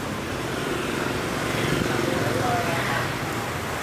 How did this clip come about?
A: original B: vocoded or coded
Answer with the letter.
A